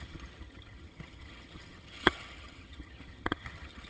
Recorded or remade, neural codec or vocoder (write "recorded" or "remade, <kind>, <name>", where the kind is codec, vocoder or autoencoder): remade, vocoder, HiFi-GAN